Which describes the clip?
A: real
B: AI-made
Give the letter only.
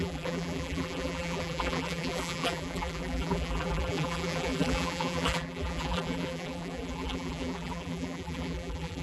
B